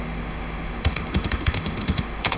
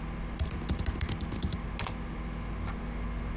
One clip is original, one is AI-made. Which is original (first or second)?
second